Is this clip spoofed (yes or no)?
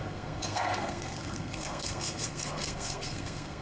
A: yes